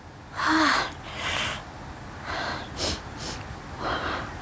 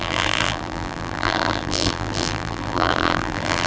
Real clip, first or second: first